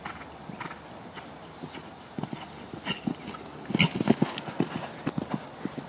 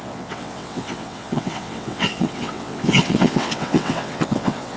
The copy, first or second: second